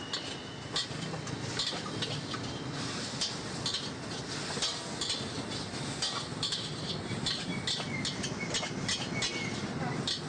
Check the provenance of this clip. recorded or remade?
recorded